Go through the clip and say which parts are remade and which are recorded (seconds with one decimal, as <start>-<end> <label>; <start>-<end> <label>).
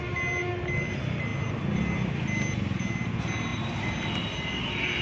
0.0-5.0 recorded